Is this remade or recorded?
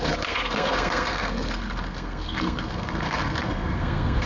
remade